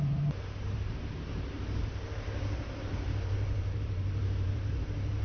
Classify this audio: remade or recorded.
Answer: remade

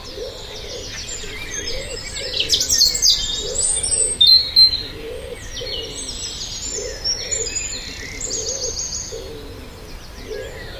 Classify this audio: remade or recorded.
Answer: recorded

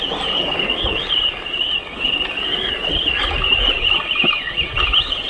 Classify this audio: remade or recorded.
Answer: recorded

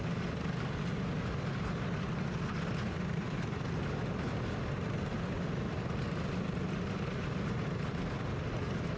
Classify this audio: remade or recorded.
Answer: recorded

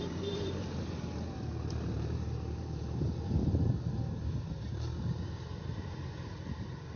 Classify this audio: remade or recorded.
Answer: remade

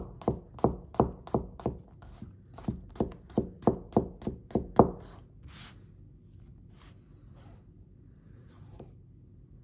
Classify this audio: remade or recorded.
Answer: recorded